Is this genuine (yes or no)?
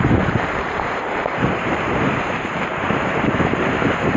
no